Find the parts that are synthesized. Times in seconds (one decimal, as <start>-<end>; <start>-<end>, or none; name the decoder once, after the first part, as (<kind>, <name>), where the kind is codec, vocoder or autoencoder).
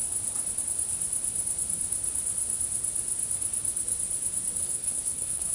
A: 4.6-5.5 (codec, SNAC)